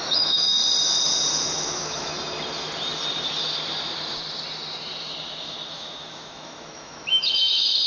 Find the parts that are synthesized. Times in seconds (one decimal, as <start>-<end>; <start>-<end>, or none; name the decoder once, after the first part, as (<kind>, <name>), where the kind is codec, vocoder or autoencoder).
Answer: 0.0-0.6 (autoencoder, DAC-VAE); 1.4-2.1; 5.7-7.9